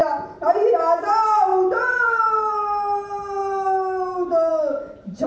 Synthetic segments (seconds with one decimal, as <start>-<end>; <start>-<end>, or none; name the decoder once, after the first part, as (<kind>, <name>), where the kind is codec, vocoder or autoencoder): none